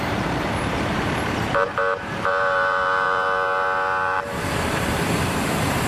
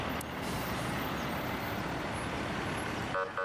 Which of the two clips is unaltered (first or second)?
second